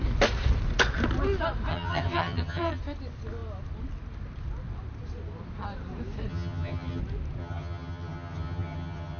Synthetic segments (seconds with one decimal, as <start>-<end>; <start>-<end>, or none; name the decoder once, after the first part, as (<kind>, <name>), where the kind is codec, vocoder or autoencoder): 1.7-2.8 (vocoder, HiFi-GAN); 6.3-7.0; 7.4-9.2